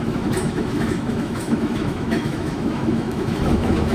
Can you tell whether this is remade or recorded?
remade